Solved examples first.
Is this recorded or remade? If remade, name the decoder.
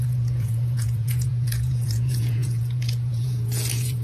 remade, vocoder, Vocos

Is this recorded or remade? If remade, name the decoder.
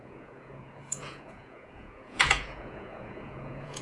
remade, vocoder, Vocos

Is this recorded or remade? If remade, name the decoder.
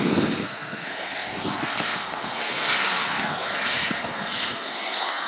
remade, codec, SNAC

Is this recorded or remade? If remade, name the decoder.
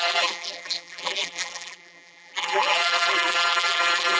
remade, vocoder, BigVGAN v2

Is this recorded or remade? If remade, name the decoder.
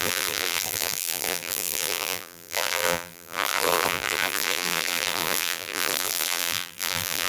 remade, vocoder, BigVGAN v2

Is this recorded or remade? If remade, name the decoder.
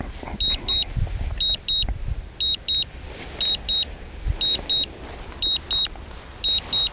recorded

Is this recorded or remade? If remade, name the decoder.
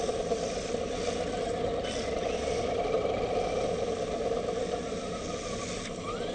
recorded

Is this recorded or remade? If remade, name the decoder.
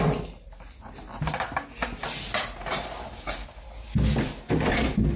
recorded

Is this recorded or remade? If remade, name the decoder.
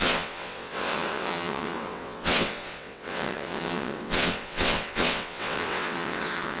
remade, vocoder, WaveNeXt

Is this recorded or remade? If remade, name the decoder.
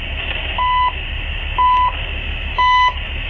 recorded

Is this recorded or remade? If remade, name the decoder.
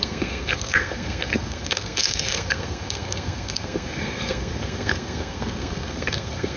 remade, codec, SNAC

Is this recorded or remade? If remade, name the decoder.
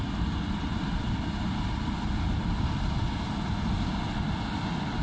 recorded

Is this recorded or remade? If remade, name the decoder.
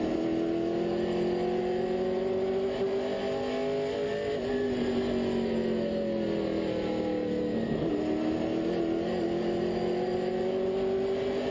recorded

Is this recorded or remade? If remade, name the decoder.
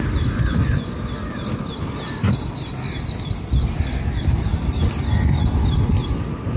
recorded